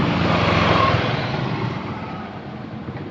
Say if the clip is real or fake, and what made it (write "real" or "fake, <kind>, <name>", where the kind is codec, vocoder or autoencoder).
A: fake, vocoder, BigVGAN v2